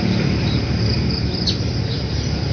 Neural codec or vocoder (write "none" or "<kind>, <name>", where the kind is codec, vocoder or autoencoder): none